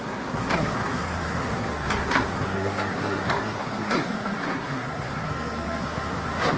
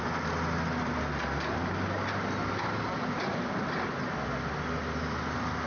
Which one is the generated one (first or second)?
first